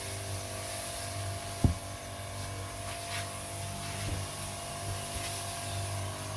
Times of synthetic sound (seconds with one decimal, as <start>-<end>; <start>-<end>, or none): none